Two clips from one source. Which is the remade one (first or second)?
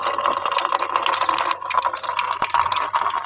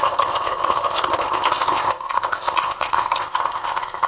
second